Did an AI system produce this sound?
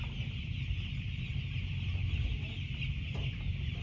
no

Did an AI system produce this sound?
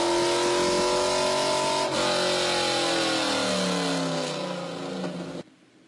no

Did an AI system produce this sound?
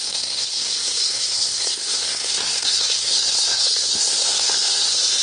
yes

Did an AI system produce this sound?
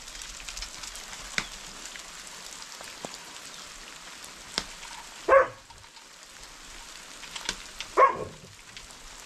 no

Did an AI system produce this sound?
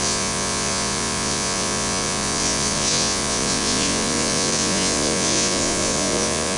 yes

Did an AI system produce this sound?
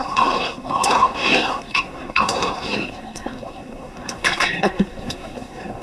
yes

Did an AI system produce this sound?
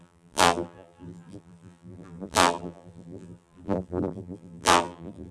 yes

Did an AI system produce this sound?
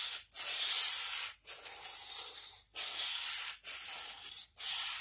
no